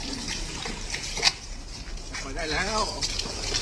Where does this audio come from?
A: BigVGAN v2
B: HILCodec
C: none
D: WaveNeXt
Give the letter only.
C